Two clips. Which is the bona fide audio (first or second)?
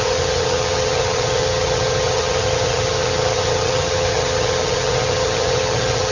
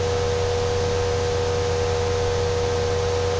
second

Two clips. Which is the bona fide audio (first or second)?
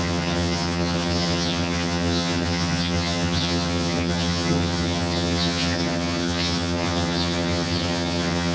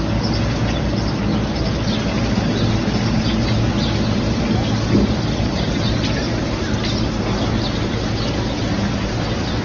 second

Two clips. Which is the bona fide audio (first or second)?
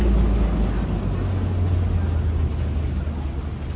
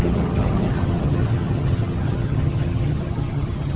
first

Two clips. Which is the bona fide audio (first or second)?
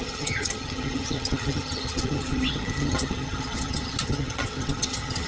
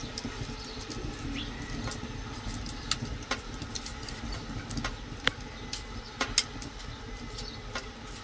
second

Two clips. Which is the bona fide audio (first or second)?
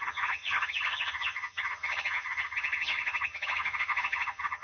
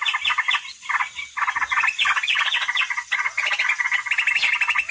second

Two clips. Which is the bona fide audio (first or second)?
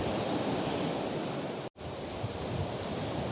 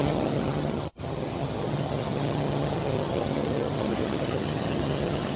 first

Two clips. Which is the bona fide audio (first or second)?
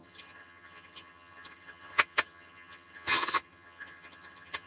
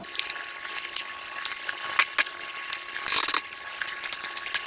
second